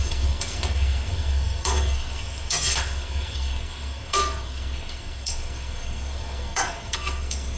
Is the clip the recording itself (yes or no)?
no